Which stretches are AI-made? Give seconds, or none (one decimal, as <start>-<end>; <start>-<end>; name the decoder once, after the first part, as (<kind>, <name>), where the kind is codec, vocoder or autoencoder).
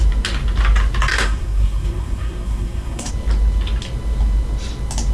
1.1-3.1 (codec, SNAC)